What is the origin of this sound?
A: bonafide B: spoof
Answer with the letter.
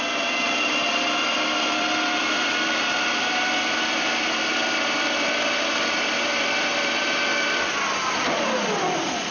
B